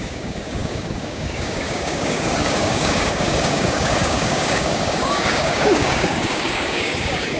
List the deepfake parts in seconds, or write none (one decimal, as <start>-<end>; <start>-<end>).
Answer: 0.0-7.4